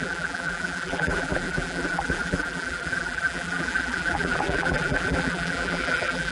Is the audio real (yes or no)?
no